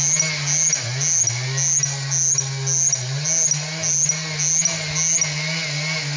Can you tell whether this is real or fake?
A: real